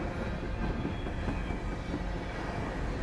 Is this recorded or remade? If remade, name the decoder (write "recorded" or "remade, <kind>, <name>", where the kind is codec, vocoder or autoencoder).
recorded